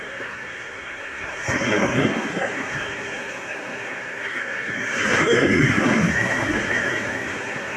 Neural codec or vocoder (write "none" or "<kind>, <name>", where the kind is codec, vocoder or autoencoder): codec, SNAC